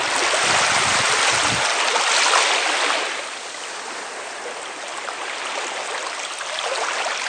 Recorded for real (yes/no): yes